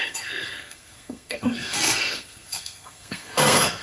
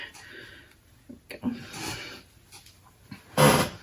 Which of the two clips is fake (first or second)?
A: first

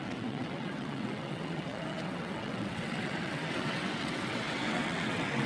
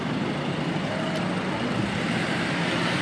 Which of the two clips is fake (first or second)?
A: first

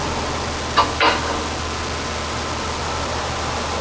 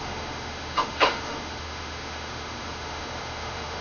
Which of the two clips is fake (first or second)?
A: second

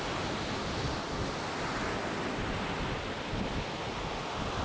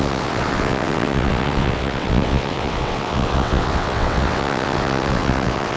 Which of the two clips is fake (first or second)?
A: second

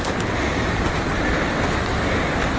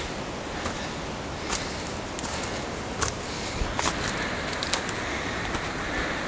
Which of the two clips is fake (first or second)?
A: first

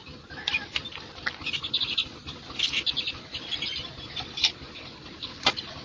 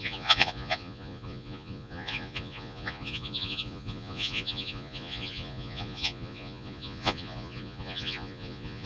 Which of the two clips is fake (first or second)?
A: second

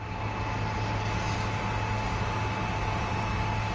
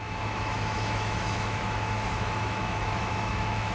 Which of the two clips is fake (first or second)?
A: second